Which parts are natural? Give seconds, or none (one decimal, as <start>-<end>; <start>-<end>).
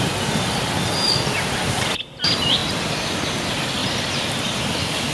0.0-2.6; 3.1-3.8